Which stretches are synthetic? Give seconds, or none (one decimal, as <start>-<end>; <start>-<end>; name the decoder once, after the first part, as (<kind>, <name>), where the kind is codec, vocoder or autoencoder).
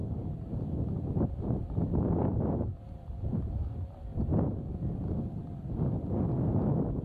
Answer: 0.0-0.5 (vocoder, BigVGAN v2)